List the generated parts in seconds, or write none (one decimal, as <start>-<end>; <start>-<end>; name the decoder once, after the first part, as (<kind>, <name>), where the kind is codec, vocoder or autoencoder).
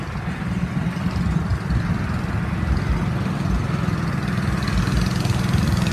none